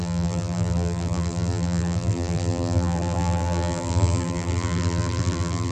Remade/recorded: remade